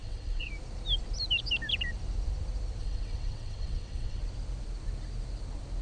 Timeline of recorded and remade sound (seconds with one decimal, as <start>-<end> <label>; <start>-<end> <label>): 0.0-0.5 remade; 0.5-2.8 recorded; 2.8-4.2 remade; 4.2-5.8 recorded